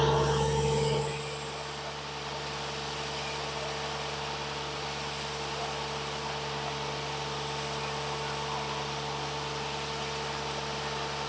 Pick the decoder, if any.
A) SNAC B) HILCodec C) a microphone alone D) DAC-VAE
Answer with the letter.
C